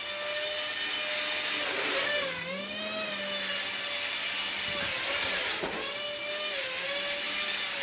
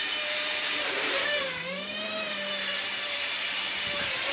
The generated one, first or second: second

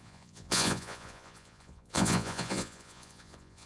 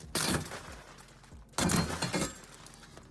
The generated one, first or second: first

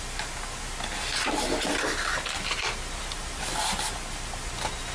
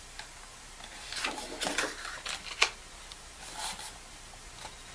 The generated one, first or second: second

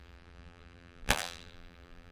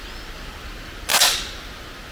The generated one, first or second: first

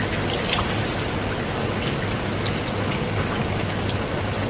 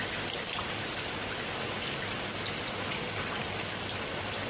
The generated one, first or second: second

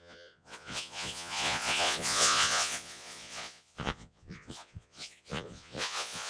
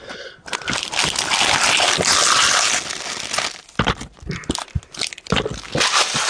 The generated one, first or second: first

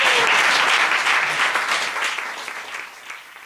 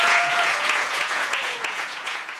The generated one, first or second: second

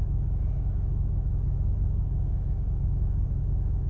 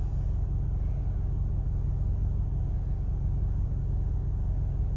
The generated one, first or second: first